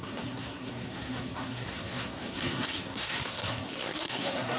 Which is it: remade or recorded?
remade